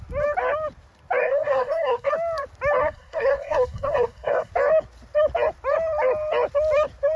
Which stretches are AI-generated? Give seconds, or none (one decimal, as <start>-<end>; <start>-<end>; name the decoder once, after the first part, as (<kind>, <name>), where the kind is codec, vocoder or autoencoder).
1.2-2.1 (codec, SNAC); 2.8-4.5